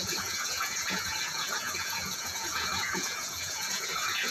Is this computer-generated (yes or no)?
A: yes